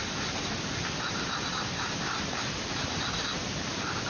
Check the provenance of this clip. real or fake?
real